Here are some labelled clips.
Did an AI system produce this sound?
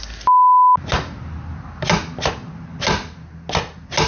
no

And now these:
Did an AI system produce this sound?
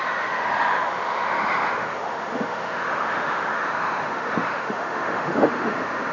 yes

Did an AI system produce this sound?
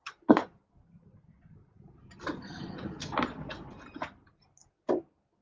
no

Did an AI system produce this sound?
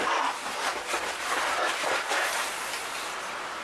no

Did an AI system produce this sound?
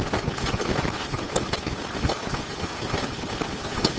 no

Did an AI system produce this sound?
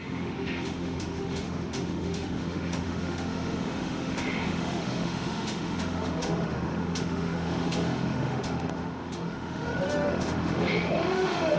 yes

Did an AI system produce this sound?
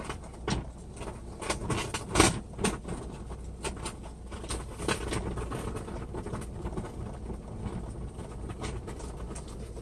no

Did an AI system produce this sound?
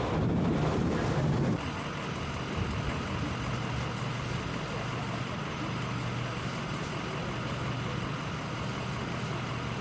no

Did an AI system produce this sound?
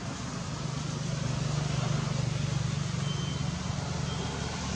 no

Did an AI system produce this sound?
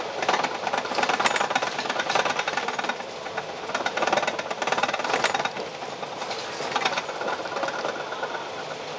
no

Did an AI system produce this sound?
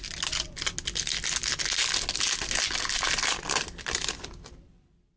no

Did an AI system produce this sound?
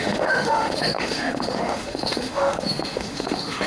yes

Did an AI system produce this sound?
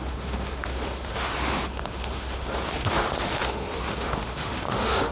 yes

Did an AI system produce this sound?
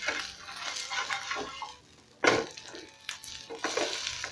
no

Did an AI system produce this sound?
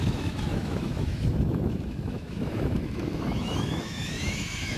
yes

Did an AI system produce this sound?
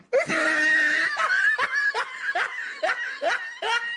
no